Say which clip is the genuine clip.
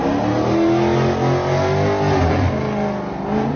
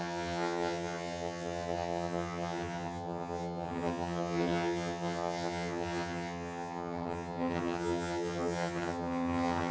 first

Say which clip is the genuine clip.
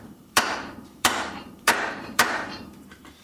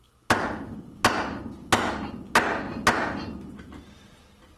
second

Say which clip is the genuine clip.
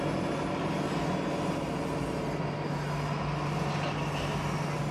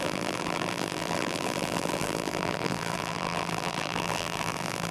first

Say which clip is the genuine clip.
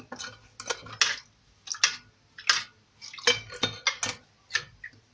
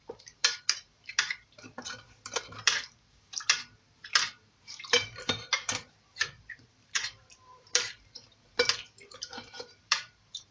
first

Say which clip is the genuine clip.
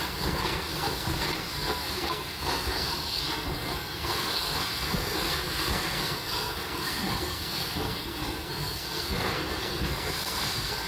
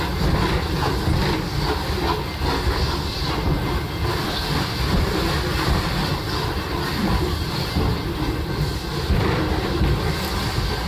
second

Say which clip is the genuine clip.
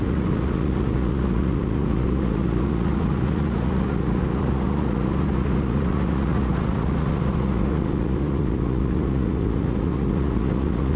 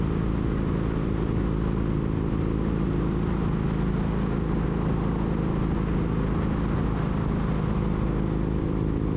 second